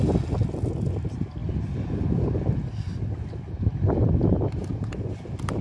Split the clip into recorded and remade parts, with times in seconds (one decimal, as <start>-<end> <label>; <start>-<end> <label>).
0.0-5.6 recorded